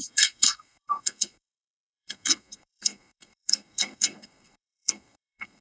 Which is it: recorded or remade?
remade